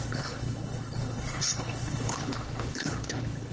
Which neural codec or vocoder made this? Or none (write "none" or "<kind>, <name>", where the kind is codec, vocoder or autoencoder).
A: codec, HILCodec